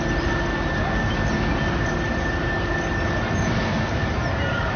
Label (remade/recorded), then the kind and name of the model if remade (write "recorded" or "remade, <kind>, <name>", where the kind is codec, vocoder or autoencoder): recorded